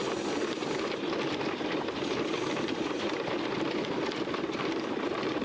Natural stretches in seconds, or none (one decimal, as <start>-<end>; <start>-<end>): none